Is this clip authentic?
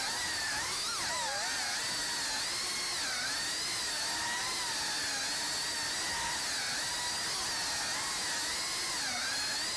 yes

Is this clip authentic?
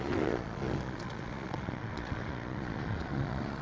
no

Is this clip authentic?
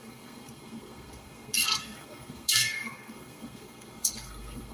no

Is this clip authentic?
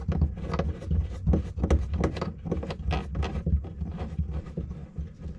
yes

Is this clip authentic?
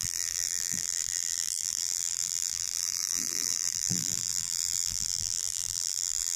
no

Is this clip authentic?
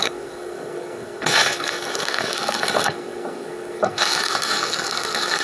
no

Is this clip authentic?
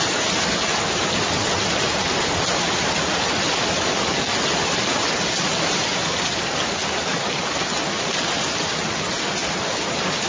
yes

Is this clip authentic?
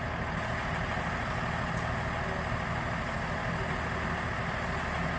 yes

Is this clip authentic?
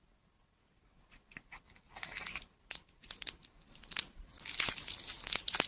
yes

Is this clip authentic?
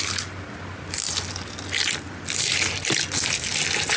yes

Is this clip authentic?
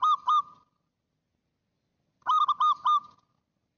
yes